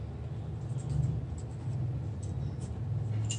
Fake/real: real